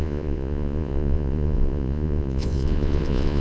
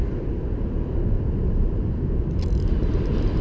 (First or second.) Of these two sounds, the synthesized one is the first